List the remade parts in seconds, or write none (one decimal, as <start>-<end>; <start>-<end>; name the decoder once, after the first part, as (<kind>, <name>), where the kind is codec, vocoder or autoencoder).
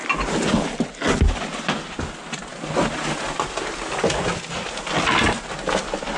none